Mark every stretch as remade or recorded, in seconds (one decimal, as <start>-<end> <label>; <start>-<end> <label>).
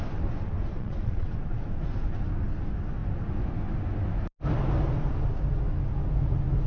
0.0-0.7 recorded; 0.7-1.3 remade; 1.3-6.7 recorded